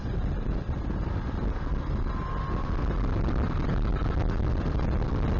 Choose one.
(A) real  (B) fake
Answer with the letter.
A